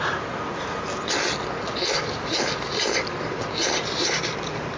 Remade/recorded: recorded